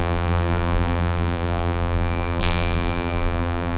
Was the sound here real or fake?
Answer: fake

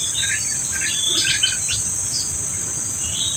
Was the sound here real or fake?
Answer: real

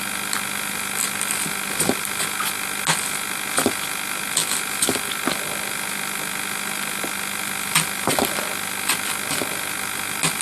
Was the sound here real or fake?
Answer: real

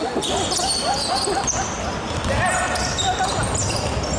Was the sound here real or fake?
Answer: real